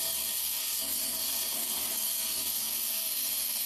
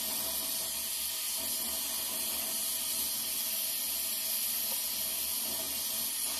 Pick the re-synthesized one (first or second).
first